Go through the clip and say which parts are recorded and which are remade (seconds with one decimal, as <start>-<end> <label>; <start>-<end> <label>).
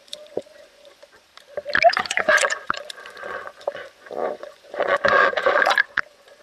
0.0-1.3 remade; 1.3-1.9 recorded; 1.9-6.4 remade